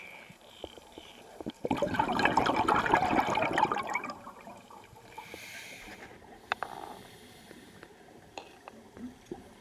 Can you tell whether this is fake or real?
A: fake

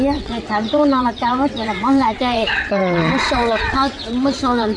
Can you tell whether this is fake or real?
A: fake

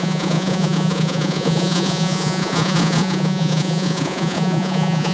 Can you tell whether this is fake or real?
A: fake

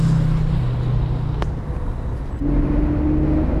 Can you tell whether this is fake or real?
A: real